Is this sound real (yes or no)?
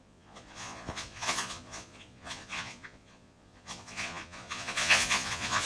no